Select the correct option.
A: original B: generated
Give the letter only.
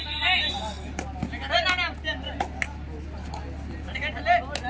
A